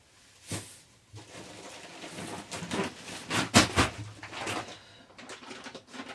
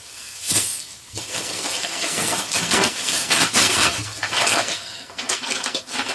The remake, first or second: second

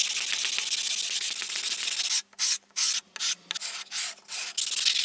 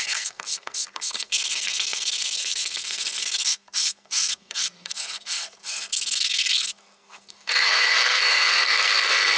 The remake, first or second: second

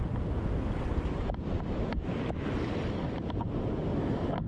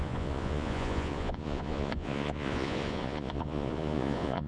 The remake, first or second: second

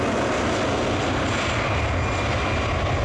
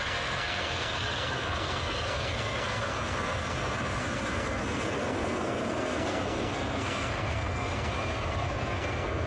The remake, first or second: second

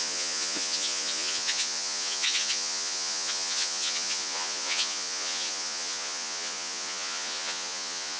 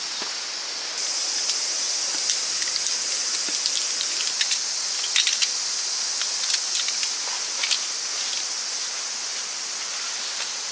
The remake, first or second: first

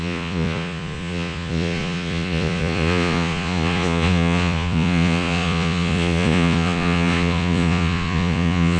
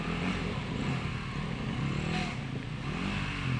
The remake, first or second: first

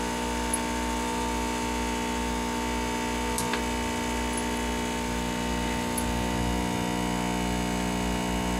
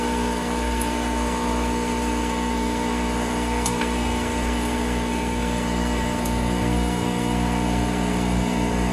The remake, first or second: second